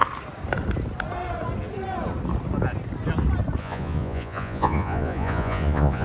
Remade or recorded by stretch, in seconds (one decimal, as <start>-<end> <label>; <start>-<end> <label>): 0.0-3.6 recorded; 3.6-6.0 remade